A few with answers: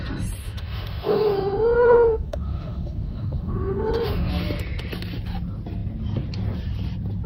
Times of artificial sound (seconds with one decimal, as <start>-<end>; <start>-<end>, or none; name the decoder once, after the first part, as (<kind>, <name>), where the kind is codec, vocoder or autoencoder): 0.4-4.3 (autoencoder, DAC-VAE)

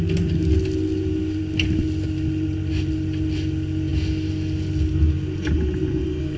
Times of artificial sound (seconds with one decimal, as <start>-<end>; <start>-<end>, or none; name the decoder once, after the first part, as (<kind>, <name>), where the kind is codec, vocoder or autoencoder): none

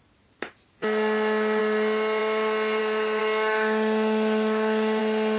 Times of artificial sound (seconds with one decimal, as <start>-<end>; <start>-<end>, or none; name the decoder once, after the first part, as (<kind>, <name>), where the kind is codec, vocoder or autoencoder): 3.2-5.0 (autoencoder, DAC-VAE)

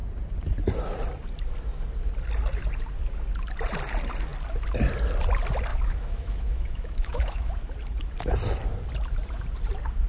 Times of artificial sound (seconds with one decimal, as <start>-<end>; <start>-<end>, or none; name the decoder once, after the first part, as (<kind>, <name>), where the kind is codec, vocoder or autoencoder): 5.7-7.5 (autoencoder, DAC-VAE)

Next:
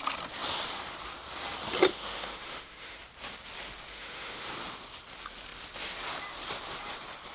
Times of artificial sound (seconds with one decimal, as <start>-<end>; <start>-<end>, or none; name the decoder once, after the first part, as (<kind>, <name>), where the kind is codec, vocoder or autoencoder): 1.9-3.0 (autoencoder, DAC-VAE); 3.9-4.5